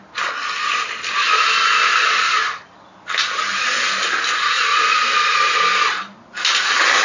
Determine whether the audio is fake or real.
real